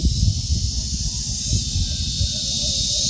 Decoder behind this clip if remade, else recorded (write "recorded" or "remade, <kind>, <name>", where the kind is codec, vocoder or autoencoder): recorded